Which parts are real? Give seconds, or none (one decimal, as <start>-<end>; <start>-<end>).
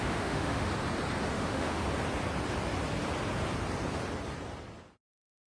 0.7-1.3; 1.8-5.1